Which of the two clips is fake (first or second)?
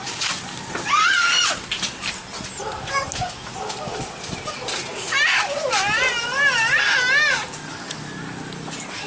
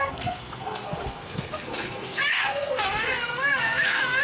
second